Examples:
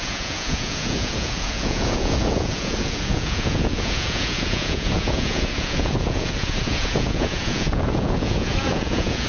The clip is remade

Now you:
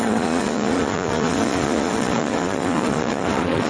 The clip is remade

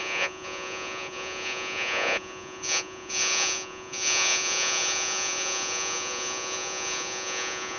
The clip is remade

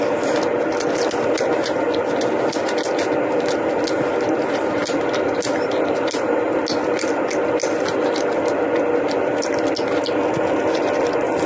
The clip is recorded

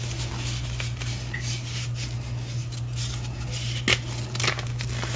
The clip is recorded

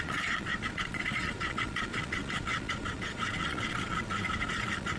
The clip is remade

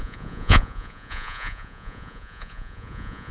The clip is remade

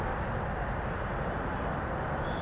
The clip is recorded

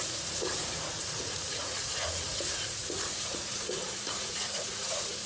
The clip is remade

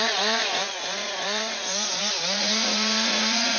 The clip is remade